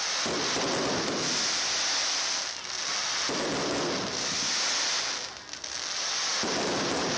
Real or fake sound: real